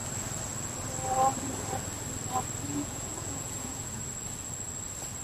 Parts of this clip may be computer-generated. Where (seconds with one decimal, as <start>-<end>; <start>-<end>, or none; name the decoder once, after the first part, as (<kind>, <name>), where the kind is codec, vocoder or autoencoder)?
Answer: 2.7-4.0 (vocoder, Vocos)